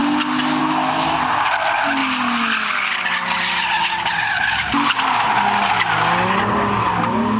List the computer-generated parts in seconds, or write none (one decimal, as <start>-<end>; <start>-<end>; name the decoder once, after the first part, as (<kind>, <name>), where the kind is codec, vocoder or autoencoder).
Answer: none